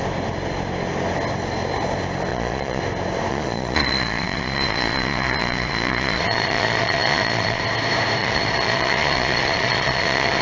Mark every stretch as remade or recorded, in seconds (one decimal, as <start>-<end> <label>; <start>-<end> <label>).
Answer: 0.0-2.3 recorded; 2.3-2.8 remade; 2.8-3.3 recorded; 3.3-7.6 remade; 7.6-8.2 recorded; 8.2-10.4 remade